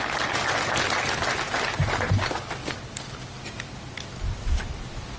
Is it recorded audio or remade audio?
recorded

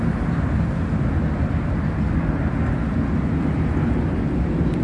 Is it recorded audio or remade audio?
recorded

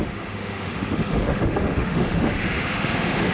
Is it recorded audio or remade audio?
remade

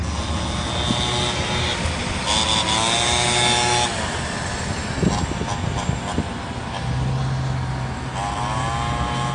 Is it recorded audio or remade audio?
recorded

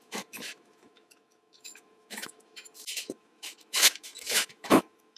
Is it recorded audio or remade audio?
remade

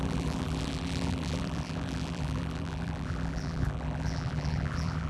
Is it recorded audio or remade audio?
remade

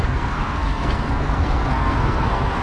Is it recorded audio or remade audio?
remade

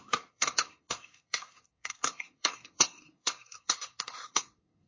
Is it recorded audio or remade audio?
remade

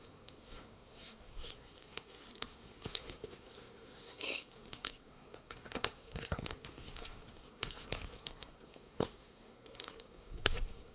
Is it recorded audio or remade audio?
remade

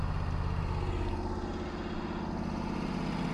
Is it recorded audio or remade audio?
recorded